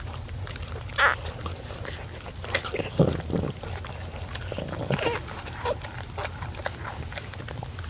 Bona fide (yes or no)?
yes